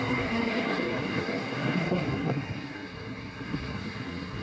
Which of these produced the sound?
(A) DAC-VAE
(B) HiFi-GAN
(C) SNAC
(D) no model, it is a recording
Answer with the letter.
C